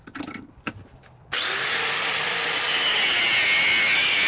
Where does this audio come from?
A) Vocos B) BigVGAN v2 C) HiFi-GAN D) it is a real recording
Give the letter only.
D